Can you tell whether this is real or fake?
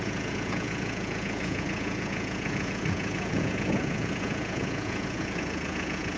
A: fake